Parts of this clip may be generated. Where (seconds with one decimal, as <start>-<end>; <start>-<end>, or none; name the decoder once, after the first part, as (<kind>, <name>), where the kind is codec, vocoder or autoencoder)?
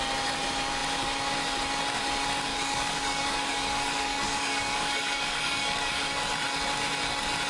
2.5-6.0 (codec, DAC)